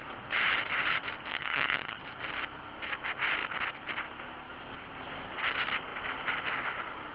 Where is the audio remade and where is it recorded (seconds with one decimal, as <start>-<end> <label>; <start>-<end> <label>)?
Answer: 0.0-1.3 recorded; 1.3-2.0 remade; 2.0-7.1 recorded

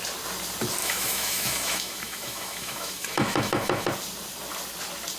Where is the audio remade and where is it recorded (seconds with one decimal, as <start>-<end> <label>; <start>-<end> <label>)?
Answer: 0.0-0.8 recorded; 0.8-3.9 remade; 3.9-5.2 recorded

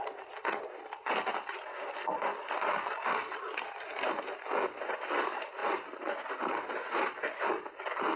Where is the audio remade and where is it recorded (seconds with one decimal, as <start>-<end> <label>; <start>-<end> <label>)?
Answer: 0.0-8.2 recorded

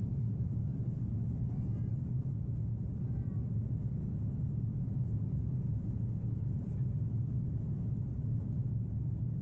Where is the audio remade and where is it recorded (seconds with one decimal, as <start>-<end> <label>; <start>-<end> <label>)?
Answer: 0.0-4.7 recorded; 4.7-6.4 remade; 6.4-9.4 recorded

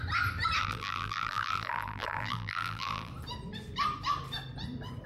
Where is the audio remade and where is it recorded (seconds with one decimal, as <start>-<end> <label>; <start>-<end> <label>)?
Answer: 0.0-0.6 recorded; 0.6-3.1 remade; 3.1-5.1 recorded